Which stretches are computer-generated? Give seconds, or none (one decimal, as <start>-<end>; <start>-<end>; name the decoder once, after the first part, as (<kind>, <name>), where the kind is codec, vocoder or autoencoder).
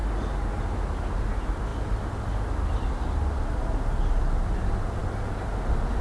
none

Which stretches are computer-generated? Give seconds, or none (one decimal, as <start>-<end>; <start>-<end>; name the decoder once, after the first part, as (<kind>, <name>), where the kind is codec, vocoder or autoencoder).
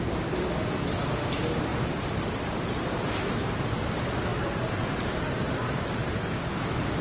1.7-3.3 (vocoder, BigVGAN v2)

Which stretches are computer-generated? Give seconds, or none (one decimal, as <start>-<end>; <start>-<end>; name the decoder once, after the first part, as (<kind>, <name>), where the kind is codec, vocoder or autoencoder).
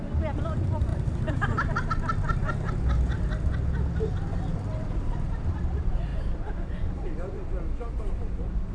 0.9-1.9 (vocoder, BigVGAN v2); 4.5-5.6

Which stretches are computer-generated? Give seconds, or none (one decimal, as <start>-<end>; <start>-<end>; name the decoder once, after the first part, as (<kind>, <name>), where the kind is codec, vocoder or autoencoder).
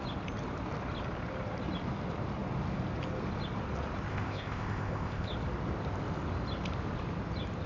4.1-5.3 (codec, ZipCodec)